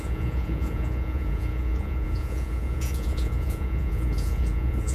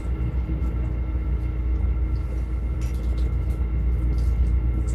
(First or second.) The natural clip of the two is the second